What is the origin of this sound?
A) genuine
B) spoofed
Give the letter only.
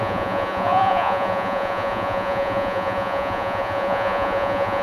B